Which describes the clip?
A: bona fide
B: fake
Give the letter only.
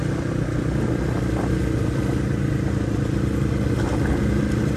A